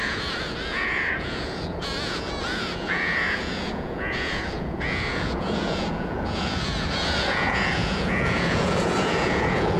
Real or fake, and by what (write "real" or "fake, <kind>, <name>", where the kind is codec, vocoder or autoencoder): fake, vocoder, Vocos